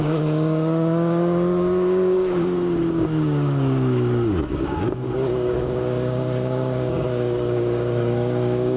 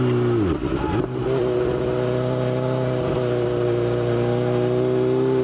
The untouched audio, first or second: second